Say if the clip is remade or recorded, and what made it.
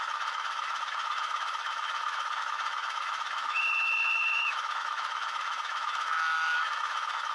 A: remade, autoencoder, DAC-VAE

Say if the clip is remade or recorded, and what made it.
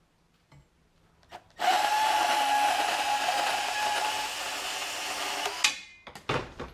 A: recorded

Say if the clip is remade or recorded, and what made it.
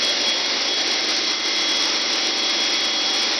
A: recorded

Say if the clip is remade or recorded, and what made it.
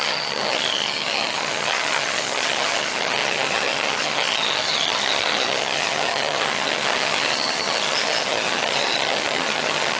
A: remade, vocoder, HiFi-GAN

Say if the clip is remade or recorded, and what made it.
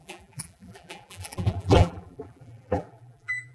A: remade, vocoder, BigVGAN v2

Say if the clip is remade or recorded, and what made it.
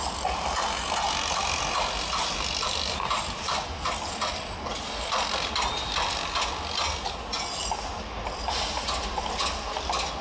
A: recorded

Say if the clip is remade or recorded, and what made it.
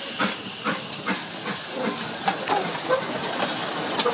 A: recorded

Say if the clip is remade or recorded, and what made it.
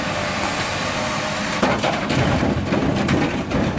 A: recorded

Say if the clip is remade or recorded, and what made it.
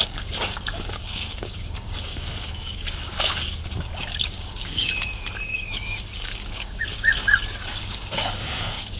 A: remade, codec, DAC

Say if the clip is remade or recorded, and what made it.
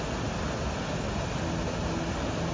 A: recorded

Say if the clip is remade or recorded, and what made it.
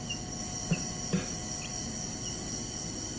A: recorded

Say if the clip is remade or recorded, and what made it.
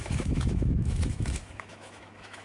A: remade, autoencoder, DAC-VAE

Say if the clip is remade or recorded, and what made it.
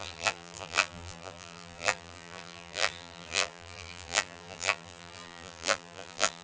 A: remade, vocoder, BigVGAN v2